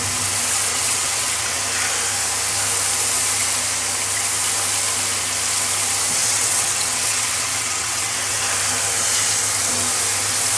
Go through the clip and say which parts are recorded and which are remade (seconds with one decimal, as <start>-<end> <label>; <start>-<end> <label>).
0.0-0.7 recorded; 0.7-1.6 remade; 1.6-6.2 recorded; 6.2-8.4 remade; 8.4-10.6 recorded